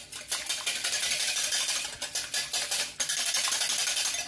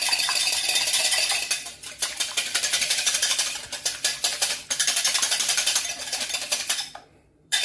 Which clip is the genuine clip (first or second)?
first